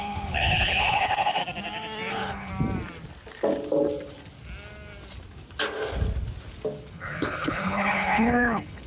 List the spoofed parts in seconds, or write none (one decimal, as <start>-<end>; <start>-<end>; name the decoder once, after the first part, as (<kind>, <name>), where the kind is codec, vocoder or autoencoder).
0.0-1.4 (codec, HILCodec); 2.1-2.5; 6.9-8.9